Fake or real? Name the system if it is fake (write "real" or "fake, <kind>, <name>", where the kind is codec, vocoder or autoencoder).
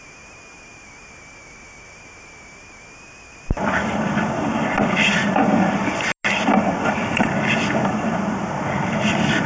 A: real